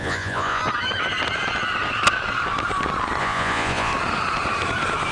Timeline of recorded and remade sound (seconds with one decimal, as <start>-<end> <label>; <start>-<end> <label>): 0.0-0.6 remade; 0.6-3.2 recorded; 3.2-3.9 remade; 3.9-5.1 recorded